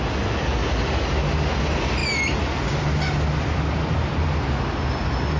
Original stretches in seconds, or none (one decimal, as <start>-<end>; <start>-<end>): 0.0-5.4